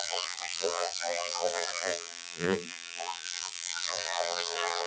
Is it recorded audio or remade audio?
remade